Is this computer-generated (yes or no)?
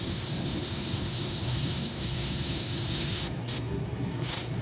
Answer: yes